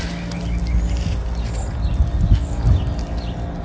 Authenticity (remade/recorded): recorded